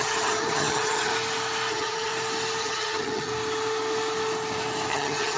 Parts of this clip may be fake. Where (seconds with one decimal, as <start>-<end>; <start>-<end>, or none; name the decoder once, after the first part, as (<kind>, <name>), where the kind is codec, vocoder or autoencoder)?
0.0-1.1 (vocoder, HiFi-GAN); 1.7-2.1; 2.6-3.3; 4.9-5.4